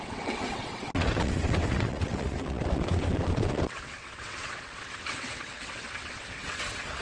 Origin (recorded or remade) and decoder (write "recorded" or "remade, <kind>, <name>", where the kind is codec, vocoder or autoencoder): remade, vocoder, WaveNeXt